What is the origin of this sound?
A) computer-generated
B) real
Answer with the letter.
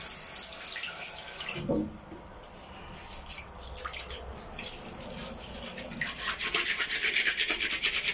B